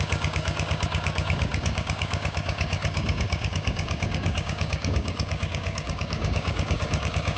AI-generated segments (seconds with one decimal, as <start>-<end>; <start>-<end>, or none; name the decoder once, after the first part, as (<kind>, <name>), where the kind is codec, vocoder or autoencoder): 0.0-7.4 (codec, DAC)